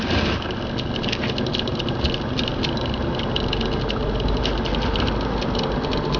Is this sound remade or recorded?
recorded